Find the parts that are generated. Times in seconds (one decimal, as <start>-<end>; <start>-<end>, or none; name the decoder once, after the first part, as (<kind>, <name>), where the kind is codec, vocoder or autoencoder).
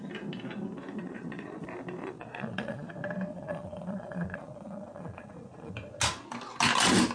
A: 1.0-1.6 (vocoder, Vocos); 2.0-2.9; 3.3-5.7